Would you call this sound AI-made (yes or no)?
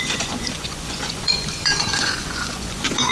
yes